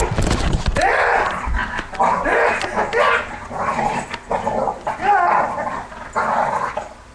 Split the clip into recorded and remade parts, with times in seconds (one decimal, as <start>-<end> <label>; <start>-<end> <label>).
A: 0.0-7.1 recorded